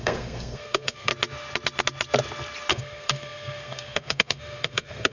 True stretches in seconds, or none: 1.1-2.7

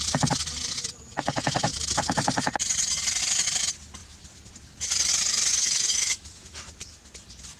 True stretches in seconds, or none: 0.0-5.5; 6.6-7.6

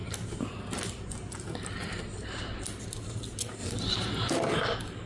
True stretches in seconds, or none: 0.0-1.8; 2.3-3.6; 4.3-5.1